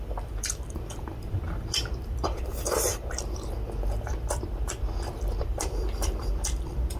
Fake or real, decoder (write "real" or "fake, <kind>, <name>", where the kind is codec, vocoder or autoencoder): fake, vocoder, BigVGAN v2